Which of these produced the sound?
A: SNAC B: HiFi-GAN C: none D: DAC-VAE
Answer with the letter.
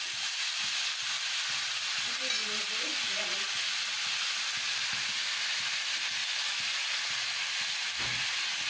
C